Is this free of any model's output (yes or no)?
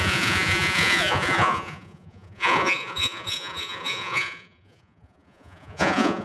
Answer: no